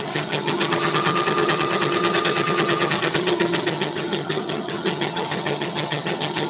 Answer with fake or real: fake